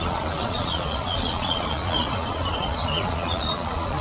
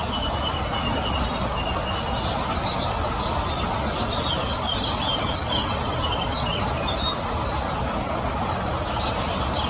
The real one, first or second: second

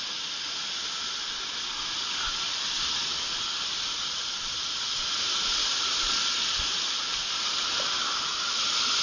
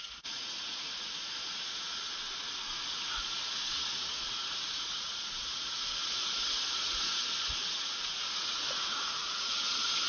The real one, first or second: first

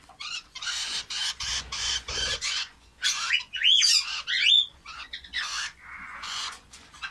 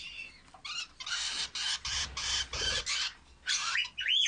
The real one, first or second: second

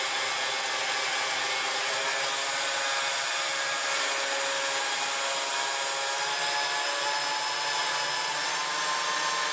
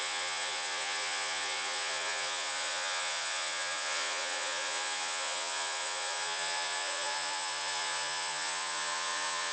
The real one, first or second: first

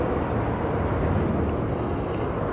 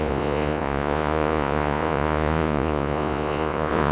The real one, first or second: first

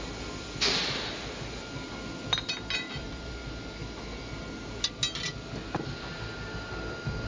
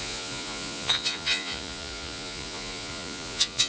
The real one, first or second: first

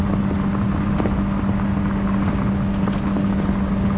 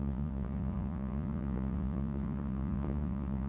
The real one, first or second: first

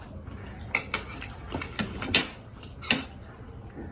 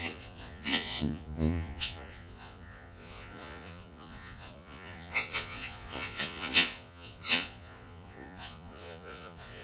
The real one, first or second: first